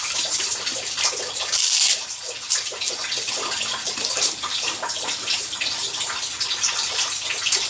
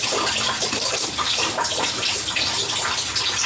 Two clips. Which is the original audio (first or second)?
second